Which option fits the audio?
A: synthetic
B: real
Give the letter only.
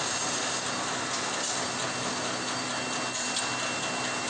B